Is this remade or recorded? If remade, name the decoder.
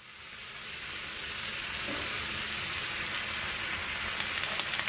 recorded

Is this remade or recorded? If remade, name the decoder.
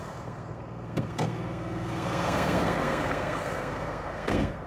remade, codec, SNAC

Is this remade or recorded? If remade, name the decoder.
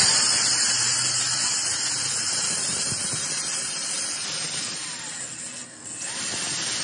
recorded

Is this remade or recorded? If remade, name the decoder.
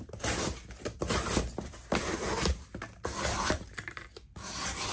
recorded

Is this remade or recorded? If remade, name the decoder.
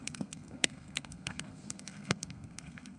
remade, codec, SNAC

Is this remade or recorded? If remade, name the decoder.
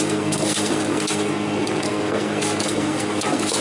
remade, codec, SNAC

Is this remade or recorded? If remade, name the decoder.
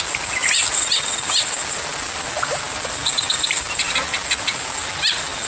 recorded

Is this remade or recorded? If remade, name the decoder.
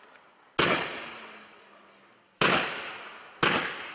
recorded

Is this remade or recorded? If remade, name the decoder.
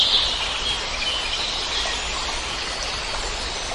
recorded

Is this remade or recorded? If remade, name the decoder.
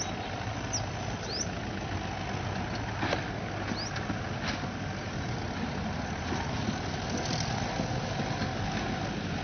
recorded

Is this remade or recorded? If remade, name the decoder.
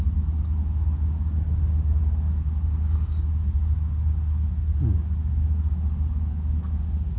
recorded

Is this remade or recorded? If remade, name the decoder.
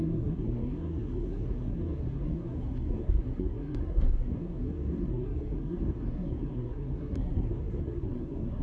remade, codec, SNAC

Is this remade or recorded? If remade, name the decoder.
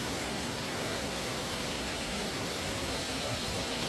remade, codec, SNAC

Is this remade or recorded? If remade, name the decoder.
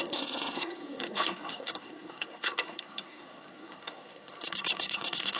remade, codec, SNAC